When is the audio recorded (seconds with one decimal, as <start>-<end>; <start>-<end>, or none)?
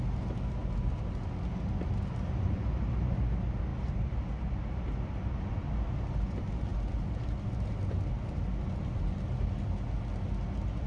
0.0-10.9